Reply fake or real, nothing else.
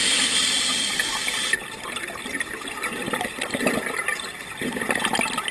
real